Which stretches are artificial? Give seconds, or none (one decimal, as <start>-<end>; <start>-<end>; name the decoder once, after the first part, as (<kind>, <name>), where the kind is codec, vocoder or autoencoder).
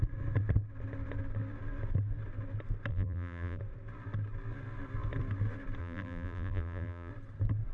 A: 2.9-3.6 (vocoder, BigVGAN v2); 5.8-7.1